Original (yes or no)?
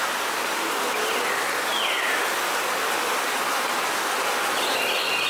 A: yes